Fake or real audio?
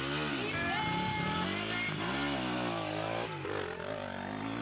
real